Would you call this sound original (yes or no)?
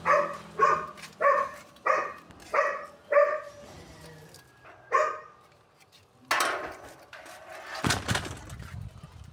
yes